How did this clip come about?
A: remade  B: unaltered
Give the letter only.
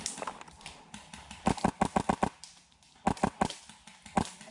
B